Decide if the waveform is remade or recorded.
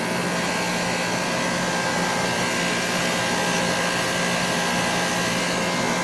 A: recorded